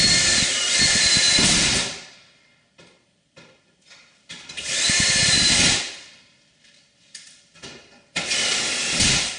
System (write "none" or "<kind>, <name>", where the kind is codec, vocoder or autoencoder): vocoder, BigVGAN v2